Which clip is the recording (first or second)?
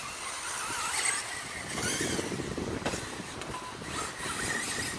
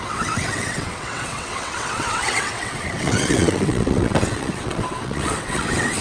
first